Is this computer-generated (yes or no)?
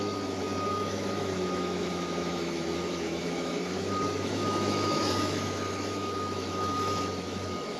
yes